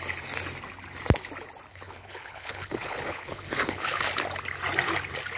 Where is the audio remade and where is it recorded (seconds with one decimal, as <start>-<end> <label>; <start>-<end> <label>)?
0.0-1.7 recorded; 1.7-4.1 remade; 4.1-5.4 recorded

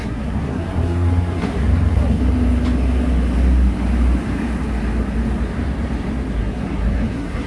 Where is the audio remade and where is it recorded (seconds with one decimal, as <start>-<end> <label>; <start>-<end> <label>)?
0.0-2.2 remade; 2.2-6.4 recorded; 6.4-7.5 remade